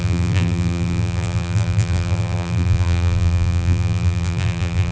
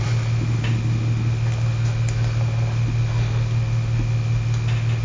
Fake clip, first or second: first